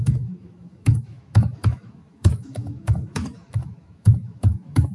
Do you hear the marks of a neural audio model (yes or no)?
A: yes